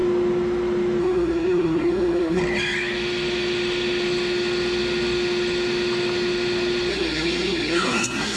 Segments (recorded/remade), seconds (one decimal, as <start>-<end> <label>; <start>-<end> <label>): 0.0-1.0 recorded; 1.0-2.4 remade; 2.4-6.9 recorded; 6.9-8.4 remade